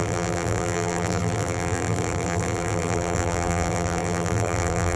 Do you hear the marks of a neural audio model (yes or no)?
yes